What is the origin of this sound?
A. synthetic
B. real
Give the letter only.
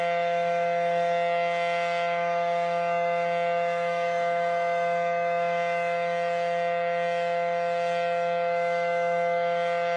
A